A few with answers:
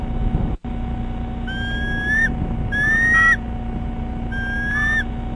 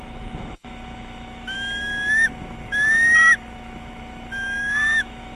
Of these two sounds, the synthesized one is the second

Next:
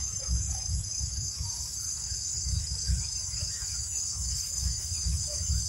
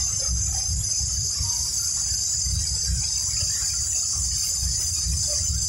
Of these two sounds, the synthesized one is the first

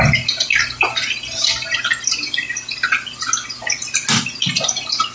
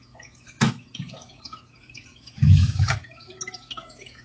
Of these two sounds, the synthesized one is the second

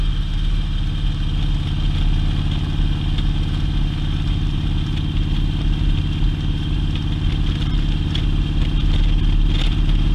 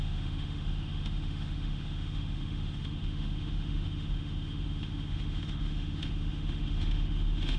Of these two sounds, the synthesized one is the second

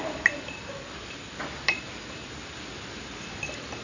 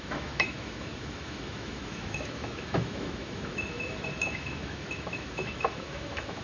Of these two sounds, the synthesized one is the second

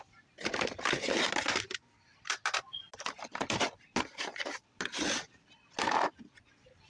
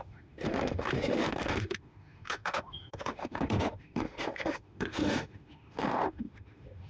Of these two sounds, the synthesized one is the second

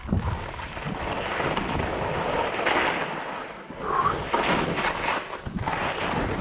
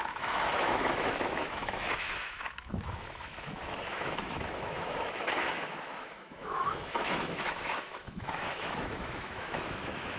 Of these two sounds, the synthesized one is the second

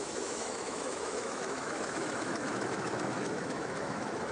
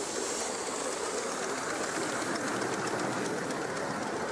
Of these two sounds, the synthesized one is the first